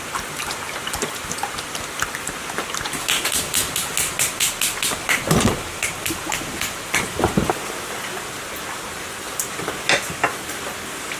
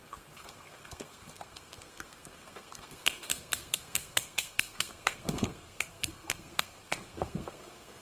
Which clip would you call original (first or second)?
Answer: first